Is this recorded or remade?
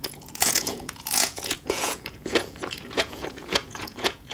remade